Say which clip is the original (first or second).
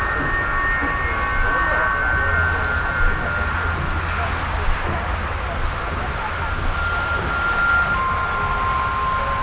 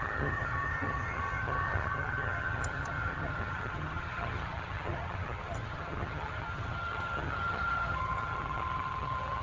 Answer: first